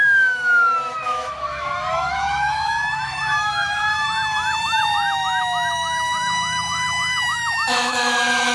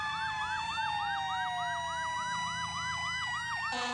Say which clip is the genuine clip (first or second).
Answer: second